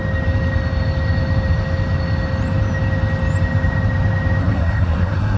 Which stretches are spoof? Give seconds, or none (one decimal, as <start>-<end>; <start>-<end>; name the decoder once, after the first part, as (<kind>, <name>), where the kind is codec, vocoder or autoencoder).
4.4-5.4 (codec, SNAC)